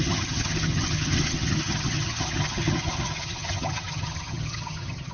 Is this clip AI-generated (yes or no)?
yes